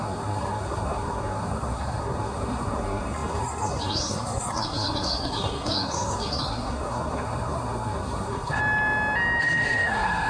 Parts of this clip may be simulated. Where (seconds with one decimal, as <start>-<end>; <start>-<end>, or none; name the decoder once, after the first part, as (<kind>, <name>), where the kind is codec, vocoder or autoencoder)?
0.0-8.6 (codec, SNAC); 9.4-10.3

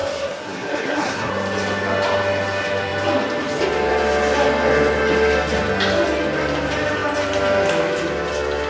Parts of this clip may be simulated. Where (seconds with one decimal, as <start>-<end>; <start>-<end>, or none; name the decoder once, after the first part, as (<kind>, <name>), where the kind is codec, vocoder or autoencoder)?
0.0-1.3 (codec, SNAC)

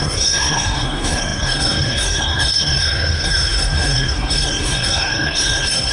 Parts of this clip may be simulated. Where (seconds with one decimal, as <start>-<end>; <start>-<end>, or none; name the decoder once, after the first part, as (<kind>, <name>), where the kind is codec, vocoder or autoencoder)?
0.0-5.9 (codec, SNAC)

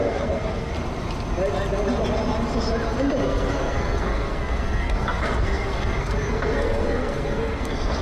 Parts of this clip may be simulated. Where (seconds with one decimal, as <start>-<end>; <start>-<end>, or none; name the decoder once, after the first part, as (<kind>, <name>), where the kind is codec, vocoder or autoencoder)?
0.0-0.7 (codec, SNAC); 3.2-8.0

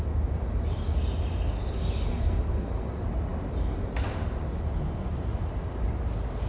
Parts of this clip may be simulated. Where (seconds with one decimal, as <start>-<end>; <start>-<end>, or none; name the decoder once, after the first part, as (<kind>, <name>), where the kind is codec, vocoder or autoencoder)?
2.1-2.9 (codec, SNAC)

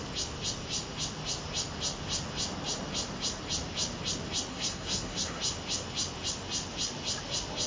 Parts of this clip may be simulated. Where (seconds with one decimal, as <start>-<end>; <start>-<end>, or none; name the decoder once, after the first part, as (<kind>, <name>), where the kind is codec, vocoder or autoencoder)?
4.5-5.4 (codec, SNAC)